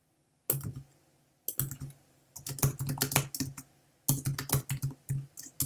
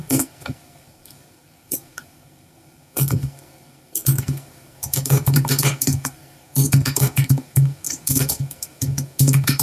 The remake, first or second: second